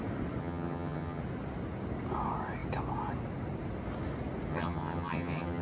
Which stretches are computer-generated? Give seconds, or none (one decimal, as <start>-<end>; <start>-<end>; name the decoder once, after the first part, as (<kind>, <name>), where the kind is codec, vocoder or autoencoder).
0.4-1.2 (vocoder, HiFi-GAN); 4.5-5.6